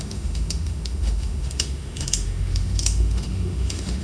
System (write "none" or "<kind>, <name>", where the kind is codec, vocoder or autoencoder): autoencoder, DAC-VAE